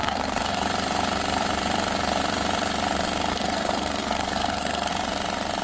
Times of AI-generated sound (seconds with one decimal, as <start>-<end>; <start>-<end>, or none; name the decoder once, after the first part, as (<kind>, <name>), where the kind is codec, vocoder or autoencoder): 0.0-0.6 (codec, SNAC); 3.3-4.9